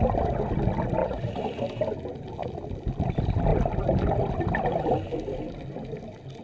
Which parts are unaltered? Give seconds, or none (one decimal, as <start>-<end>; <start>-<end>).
0.0-1.0; 1.6-6.4